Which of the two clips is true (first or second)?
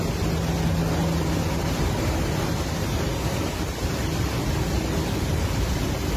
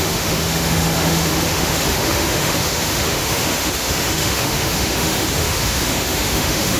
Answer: first